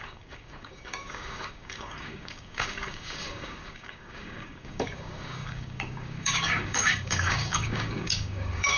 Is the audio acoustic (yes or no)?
no